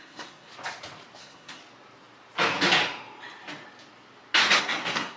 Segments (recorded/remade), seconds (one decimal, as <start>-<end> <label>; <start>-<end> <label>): 0.0-0.5 remade; 0.5-1.2 recorded; 1.2-1.6 remade; 1.6-4.6 recorded; 4.6-5.2 remade